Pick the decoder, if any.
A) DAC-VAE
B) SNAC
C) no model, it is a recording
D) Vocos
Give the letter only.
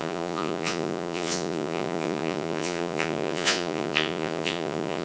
D